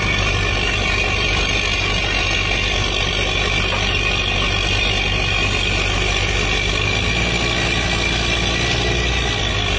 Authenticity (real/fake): real